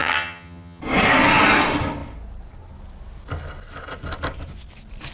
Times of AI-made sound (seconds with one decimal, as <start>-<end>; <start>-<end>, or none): 0.0-0.8